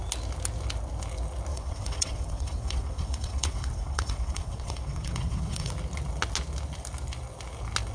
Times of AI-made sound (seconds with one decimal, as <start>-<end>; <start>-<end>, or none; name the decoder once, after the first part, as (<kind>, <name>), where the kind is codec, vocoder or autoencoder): 1.5-5.7 (vocoder, WaveNeXt)